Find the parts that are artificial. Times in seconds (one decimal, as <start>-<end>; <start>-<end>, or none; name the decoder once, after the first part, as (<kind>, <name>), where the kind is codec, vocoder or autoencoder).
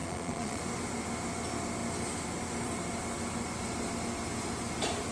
0.0-0.6 (vocoder, Vocos)